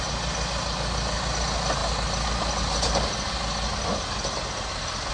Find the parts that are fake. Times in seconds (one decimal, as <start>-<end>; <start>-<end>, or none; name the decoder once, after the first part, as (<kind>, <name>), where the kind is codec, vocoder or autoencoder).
none